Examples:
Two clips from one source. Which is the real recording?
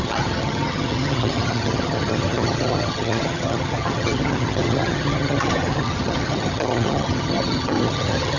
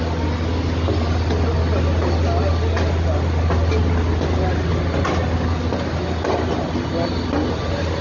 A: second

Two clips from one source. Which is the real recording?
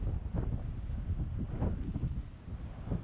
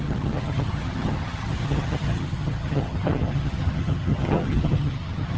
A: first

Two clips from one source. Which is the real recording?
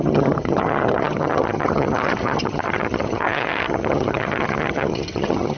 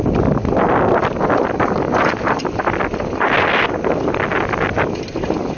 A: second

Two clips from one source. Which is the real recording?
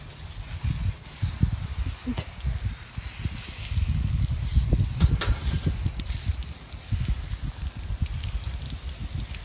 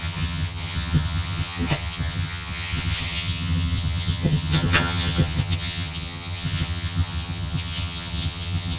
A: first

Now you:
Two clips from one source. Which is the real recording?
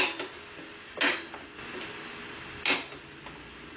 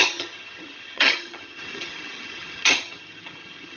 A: first